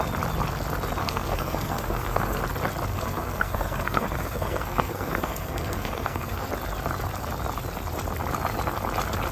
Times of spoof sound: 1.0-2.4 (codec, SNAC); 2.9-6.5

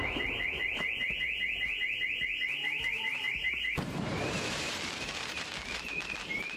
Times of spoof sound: 2.6-6.6 (vocoder, BigVGAN v2)